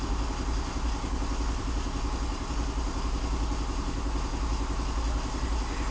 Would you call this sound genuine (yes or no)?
yes